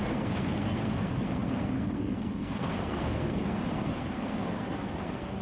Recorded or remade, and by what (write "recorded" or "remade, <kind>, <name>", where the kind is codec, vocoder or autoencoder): remade, codec, SNAC